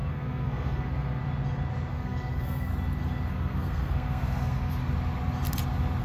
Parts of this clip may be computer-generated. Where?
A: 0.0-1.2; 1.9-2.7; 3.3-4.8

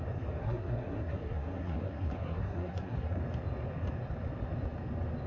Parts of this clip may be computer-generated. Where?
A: 0.4-3.2

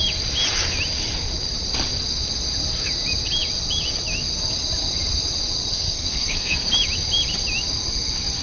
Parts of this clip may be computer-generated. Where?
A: 5.7-6.7

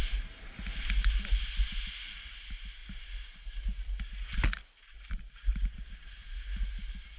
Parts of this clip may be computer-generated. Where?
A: none

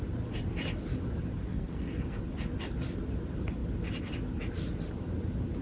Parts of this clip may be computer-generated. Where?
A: 1.5-2.2

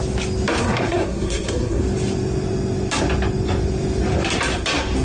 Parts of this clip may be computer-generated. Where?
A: 0.6-1.8

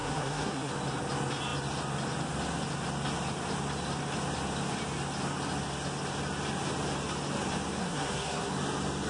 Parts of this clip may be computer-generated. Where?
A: 0.0-0.7; 7.8-8.5